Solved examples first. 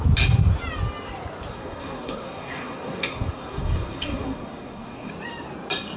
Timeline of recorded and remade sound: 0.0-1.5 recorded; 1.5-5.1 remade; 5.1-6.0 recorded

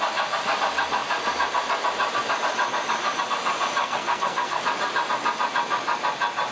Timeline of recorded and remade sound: 0.0-3.8 recorded; 3.8-4.6 remade; 4.6-6.5 recorded

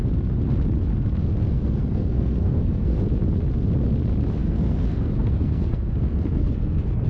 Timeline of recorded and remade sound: 0.0-1.2 recorded; 1.2-3.0 remade; 3.0-4.4 recorded; 4.4-7.1 remade

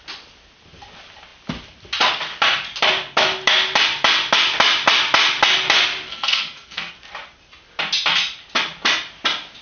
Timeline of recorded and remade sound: 0.0-6.1 recorded; 6.1-6.9 remade; 6.9-9.6 recorded